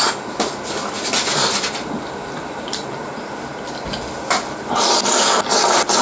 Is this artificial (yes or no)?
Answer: no